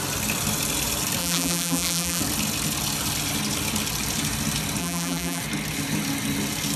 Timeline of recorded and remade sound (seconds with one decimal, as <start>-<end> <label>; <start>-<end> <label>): 0.0-1.2 recorded; 1.2-2.2 remade; 2.2-4.8 recorded; 4.8-5.4 remade; 5.4-6.8 recorded